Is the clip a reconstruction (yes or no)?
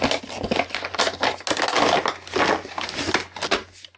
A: no